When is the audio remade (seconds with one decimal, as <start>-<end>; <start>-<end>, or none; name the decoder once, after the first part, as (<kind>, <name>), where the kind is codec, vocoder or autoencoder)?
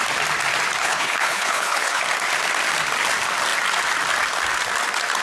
0.8-2.0 (codec, HILCodec)